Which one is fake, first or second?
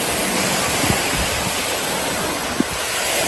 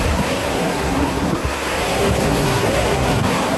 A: second